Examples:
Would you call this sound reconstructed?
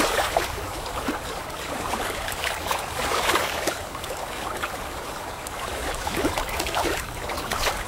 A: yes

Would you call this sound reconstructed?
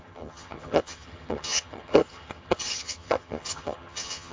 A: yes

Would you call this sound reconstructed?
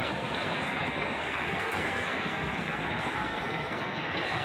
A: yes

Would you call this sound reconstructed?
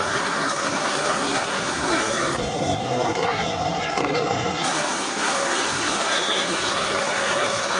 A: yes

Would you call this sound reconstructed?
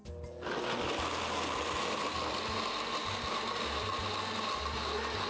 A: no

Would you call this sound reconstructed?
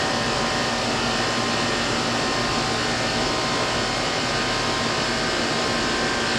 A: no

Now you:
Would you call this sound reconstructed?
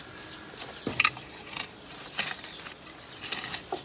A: no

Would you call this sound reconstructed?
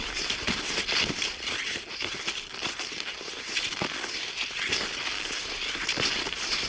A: no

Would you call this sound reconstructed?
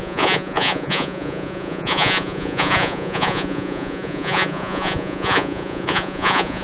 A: yes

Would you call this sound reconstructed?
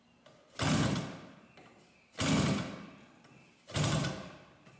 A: no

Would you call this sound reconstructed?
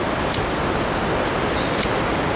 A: no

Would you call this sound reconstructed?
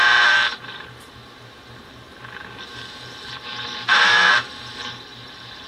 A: yes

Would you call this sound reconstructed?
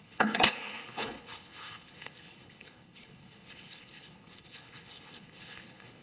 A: yes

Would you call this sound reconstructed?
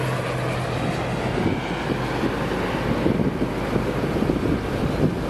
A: no